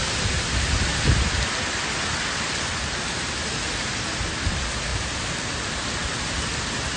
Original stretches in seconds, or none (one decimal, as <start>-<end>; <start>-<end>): 0.0-7.0